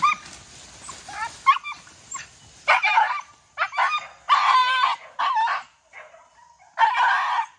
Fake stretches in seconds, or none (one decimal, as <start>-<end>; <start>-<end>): none

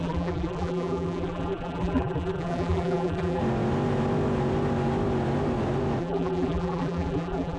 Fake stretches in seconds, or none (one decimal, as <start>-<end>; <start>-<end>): 0.0-3.4; 6.0-7.6

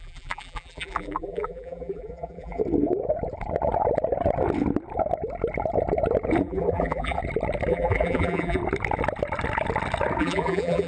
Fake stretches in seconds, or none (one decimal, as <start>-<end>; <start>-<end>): 0.0-2.6; 6.4-7.2; 7.7-8.6; 10.2-10.9

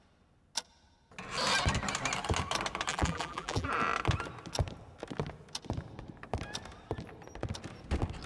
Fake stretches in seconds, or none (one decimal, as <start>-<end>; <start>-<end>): 2.9-3.7

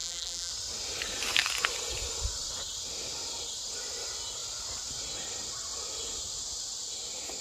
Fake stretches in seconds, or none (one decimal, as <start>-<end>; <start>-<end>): 0.0-0.5

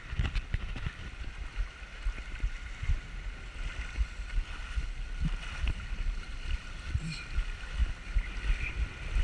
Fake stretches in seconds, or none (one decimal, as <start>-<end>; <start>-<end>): none